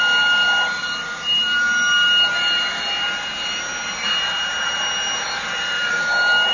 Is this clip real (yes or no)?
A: yes